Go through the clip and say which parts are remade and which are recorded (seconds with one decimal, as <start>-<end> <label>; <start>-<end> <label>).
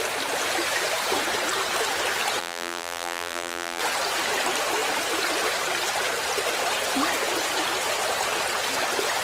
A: 0.0-2.4 recorded; 2.4-3.8 remade; 3.8-9.2 recorded